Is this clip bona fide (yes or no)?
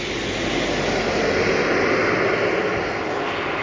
yes